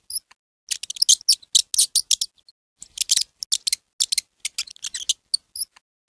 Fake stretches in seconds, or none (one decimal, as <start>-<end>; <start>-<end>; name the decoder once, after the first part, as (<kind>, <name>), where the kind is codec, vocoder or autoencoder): none